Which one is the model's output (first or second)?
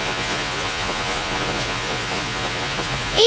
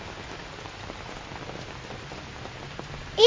first